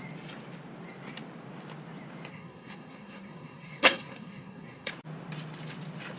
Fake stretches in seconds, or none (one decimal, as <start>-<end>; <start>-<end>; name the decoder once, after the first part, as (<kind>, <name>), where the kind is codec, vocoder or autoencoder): 2.3-4.9 (codec, SNAC)